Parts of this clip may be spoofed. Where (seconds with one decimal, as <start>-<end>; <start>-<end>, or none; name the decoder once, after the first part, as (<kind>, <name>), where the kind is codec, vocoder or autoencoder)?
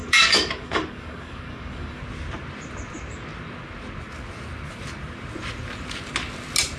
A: 0.0-2.0 (codec, DAC)